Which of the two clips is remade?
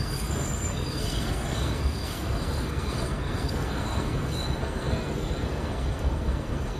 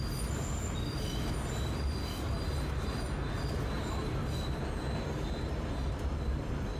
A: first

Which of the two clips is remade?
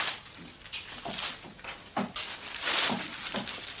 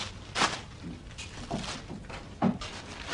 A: second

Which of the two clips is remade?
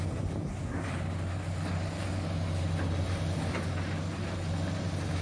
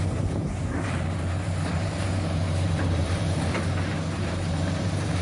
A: second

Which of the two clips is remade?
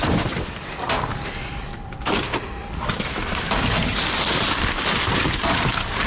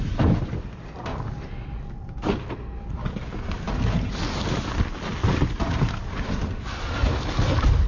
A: first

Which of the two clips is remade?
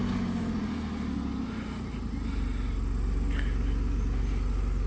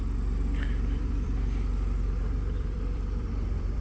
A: second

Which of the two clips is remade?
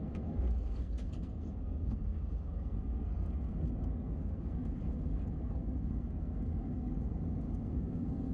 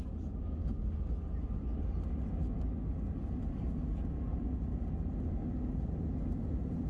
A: first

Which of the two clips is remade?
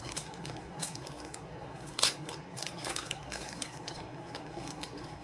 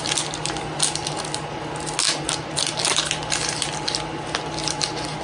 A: first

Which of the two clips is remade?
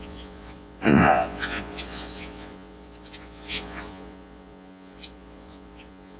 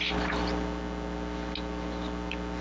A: first